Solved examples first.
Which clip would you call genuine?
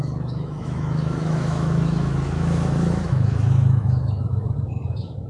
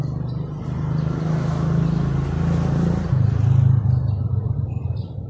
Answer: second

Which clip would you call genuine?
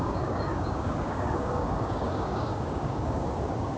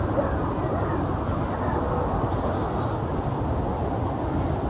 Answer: second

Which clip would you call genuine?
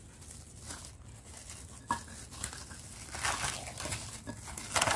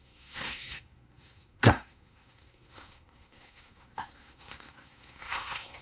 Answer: first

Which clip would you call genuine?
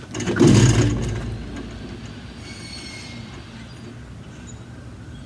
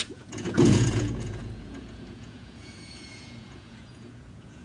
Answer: first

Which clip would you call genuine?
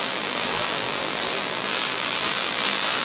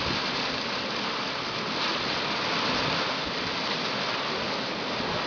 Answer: second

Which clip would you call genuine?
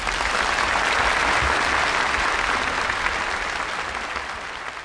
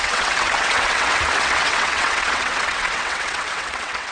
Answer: first